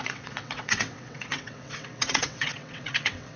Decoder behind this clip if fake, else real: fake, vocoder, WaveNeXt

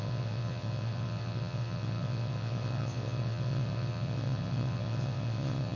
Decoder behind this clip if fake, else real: fake, vocoder, WaveNeXt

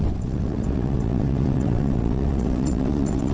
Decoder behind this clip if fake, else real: fake, vocoder, WaveNeXt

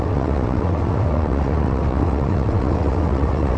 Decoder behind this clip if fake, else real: fake, vocoder, WaveNeXt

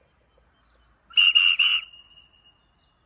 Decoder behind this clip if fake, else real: real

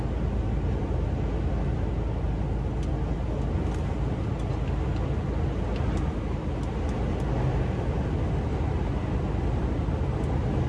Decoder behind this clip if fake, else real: real